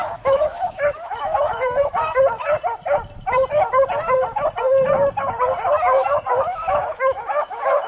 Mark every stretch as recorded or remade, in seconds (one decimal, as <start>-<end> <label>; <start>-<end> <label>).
0.0-2.0 remade; 2.0-6.4 recorded; 6.4-7.9 remade

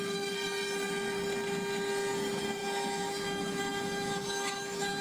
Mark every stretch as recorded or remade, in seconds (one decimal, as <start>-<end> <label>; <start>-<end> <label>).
0.0-2.6 recorded; 2.6-5.0 remade

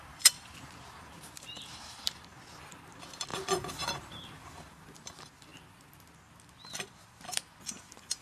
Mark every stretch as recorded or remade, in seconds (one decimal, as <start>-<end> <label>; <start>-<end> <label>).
0.0-8.2 recorded

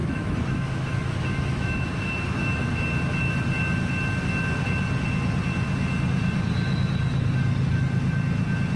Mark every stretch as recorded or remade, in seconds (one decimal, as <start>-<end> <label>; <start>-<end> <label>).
0.0-2.7 remade; 2.7-8.8 recorded

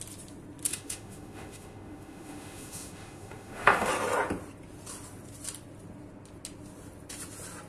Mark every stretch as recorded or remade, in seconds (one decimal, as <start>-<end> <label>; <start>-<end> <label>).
0.0-0.7 recorded; 0.7-3.9 remade; 3.9-7.7 recorded

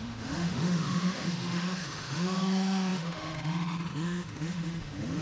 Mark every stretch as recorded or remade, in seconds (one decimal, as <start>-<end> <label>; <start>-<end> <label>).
0.0-5.2 remade

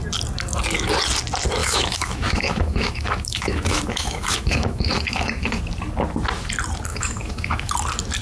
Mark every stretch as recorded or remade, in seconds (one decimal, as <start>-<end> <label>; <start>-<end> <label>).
0.0-1.6 recorded; 1.6-5.6 remade; 5.6-6.9 recorded; 6.9-7.7 remade; 7.7-8.2 recorded